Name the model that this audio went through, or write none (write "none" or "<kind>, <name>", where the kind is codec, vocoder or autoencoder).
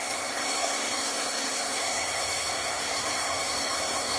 codec, SNAC